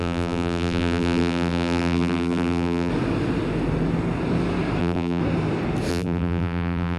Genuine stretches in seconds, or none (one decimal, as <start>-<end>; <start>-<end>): 2.9-4.8; 5.2-5.9